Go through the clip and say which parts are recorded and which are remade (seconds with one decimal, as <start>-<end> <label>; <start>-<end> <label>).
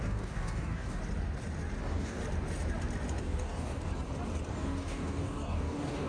0.0-1.0 remade; 1.0-1.8 recorded; 1.8-2.2 remade; 2.2-3.2 recorded; 3.2-3.9 remade; 3.9-4.5 recorded; 4.5-6.1 remade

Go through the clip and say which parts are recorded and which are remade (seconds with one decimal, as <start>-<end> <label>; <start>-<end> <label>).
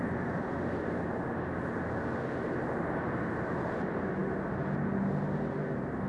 0.0-6.1 recorded